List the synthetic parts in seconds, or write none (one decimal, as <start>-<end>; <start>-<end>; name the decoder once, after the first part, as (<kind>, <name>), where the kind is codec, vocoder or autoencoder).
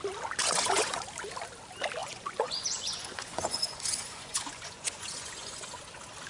0.4-1.0 (vocoder, Vocos); 2.0-5.8